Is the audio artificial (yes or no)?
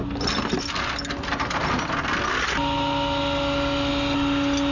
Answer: no